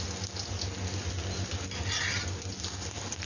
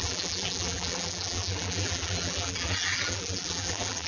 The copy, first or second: second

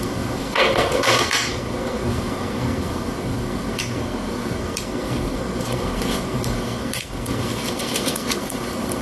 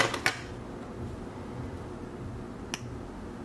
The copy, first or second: first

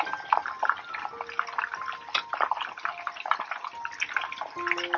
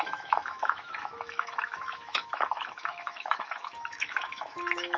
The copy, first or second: second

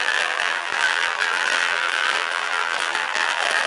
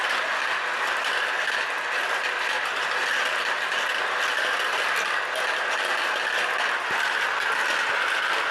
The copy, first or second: first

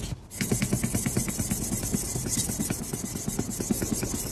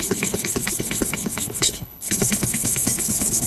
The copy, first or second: second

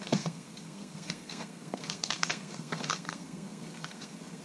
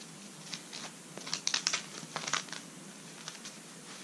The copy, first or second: first